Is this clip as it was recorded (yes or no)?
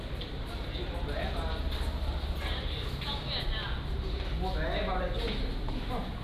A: yes